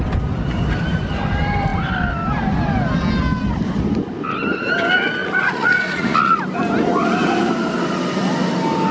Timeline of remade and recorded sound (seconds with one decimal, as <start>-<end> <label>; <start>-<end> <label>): 0.0-5.2 recorded; 5.2-6.4 remade; 6.4-8.9 recorded